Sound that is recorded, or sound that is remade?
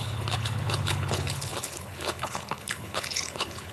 remade